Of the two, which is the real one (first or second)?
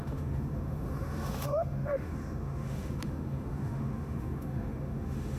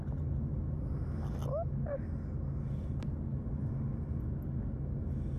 second